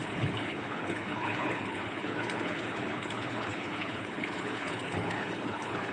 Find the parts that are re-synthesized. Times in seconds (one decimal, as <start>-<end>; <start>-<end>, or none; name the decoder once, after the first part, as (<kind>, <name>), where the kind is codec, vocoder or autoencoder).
0.0-5.9 (codec, HILCodec)